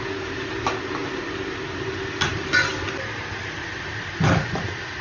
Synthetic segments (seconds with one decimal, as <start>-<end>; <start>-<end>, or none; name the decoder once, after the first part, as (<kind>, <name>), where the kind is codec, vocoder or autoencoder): none